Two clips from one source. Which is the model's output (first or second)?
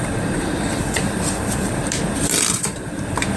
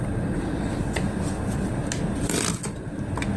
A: first